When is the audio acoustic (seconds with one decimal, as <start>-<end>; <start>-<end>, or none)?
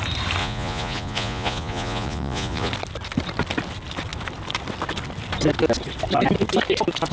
0.0-0.4; 2.7-7.1